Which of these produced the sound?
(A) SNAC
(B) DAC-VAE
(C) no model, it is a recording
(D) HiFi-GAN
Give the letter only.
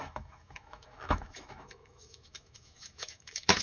B